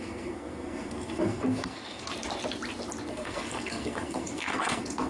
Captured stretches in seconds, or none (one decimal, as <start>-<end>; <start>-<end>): 2.1-3.1